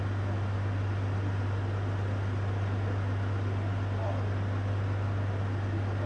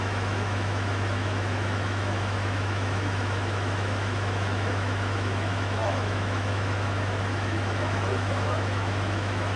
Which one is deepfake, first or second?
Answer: second